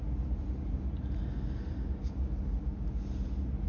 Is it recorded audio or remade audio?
recorded